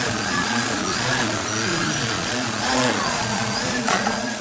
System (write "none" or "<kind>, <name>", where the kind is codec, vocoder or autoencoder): vocoder, Vocos